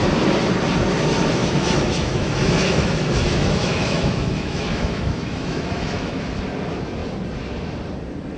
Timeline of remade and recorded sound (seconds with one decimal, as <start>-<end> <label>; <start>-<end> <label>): 0.0-1.4 recorded; 1.4-6.4 remade; 6.4-8.4 recorded

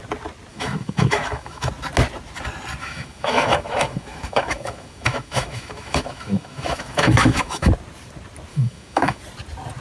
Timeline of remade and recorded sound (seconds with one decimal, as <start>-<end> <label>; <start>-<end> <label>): 0.0-0.5 recorded; 0.5-1.7 remade; 1.7-2.8 recorded; 2.8-7.7 remade; 7.7-8.5 recorded; 8.5-9.2 remade; 9.2-9.8 recorded

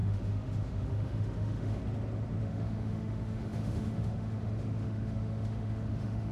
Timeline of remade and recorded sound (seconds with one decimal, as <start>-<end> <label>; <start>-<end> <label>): 0.0-1.8 remade; 1.8-2.4 recorded; 2.4-6.3 remade

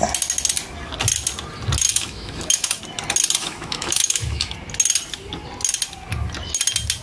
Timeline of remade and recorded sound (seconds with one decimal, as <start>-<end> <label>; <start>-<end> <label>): 0.0-1.9 recorded; 1.9-2.8 remade; 2.8-3.4 recorded; 3.4-4.5 remade; 4.5-7.0 recorded